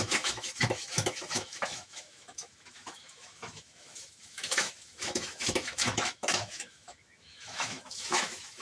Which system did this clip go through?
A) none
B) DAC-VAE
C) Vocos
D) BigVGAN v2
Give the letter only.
B